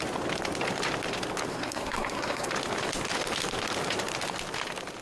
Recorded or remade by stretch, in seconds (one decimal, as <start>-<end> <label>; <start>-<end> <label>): 0.0-1.5 recorded; 1.5-2.5 remade; 2.5-5.0 recorded